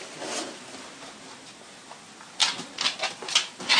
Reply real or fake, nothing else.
real